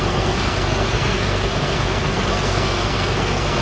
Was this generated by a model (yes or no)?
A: yes